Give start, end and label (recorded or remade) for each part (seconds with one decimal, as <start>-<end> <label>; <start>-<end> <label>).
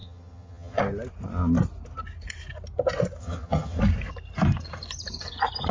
0.0-0.8 remade; 0.8-3.2 recorded; 3.2-3.8 remade; 3.8-5.7 recorded